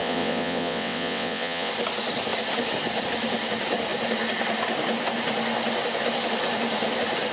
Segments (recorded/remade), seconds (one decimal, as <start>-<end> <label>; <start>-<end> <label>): 0.0-1.7 remade; 1.7-7.3 recorded